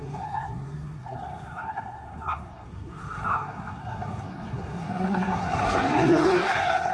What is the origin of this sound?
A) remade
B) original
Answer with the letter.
A